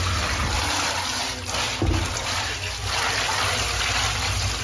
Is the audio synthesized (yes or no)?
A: no